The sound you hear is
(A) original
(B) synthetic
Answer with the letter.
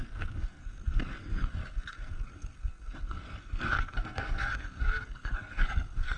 B